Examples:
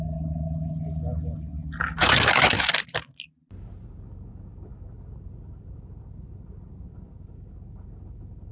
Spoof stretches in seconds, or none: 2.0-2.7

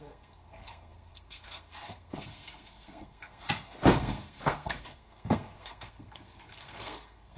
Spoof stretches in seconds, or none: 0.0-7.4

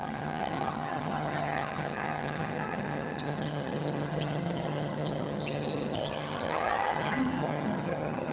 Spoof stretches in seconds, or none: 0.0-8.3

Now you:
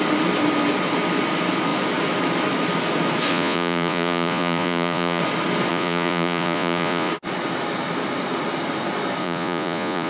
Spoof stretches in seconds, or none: 3.3-5.2; 5.7-7.1; 9.2-10.1